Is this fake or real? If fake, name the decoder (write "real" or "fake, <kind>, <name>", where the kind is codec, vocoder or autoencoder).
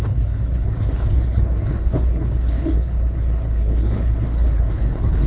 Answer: fake, codec, HILCodec